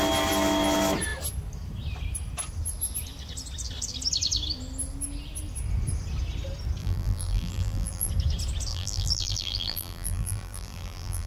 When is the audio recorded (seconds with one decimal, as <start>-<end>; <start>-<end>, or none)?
0.0-6.8; 8.1-8.7